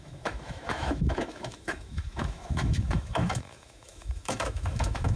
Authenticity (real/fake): fake